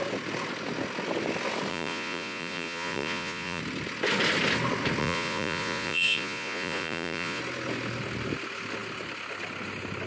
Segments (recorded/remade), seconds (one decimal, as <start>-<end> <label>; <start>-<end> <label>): 0.0-1.7 recorded; 1.7-3.6 remade; 3.6-5.0 recorded; 5.0-7.4 remade; 7.4-10.1 recorded